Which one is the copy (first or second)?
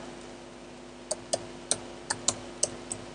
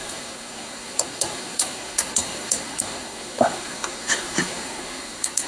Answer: second